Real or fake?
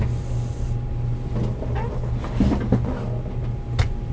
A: real